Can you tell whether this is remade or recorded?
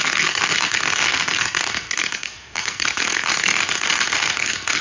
remade